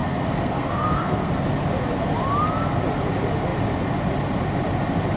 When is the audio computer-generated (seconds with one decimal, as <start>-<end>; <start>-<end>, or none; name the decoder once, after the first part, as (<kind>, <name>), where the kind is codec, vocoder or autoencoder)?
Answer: 0.0-1.3 (codec, SNAC)

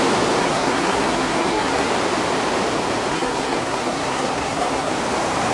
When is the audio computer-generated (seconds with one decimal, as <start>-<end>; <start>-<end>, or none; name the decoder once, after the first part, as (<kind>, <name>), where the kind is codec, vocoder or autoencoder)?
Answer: 0.4-1.9 (codec, SNAC); 3.1-4.9